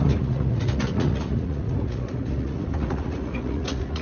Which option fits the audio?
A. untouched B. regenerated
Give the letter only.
B